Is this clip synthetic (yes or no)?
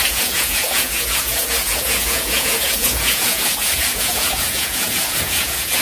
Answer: yes